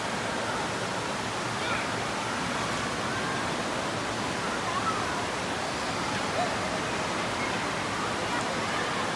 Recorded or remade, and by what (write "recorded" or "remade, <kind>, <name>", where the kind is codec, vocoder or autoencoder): recorded